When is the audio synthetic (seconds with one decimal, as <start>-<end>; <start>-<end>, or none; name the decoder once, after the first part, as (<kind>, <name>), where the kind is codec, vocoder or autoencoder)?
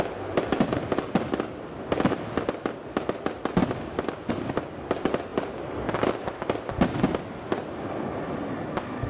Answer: none